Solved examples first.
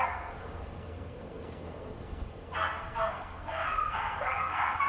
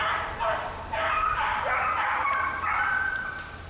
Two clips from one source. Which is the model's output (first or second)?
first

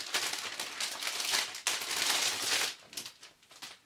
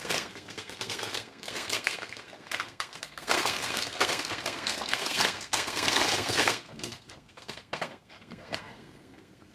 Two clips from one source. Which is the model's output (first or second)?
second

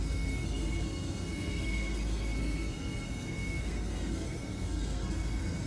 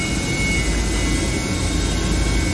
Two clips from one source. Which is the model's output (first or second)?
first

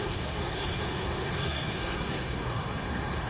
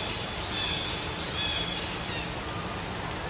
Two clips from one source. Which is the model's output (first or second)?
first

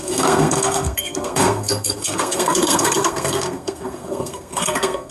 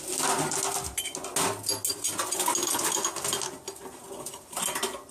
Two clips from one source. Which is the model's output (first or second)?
first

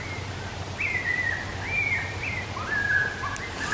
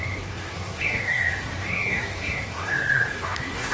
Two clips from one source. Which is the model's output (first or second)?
second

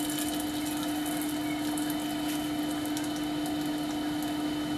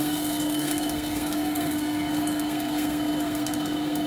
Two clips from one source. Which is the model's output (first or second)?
second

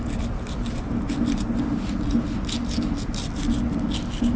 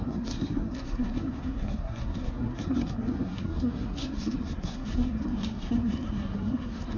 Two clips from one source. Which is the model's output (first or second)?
second